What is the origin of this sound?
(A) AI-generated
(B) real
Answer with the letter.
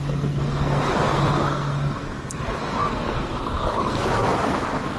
A